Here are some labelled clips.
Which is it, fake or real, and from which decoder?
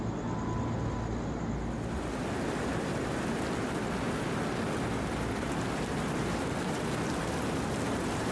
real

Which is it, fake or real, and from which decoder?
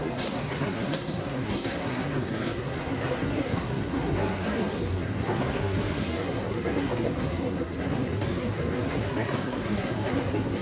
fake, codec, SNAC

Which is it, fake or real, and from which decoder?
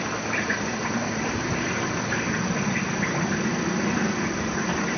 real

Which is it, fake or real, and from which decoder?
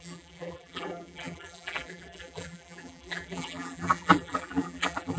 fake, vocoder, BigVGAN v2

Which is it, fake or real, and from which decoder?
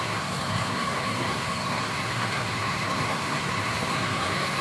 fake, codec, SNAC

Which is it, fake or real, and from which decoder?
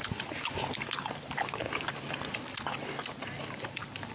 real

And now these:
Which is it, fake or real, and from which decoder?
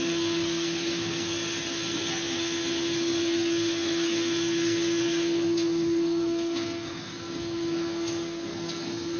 fake, codec, SNAC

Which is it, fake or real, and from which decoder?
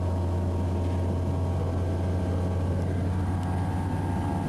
real